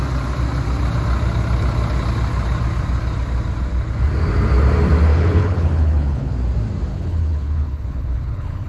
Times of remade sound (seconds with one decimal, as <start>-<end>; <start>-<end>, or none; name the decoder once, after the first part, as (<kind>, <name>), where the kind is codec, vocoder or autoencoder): 5.1-6.3 (codec, HILCodec); 6.9-8.7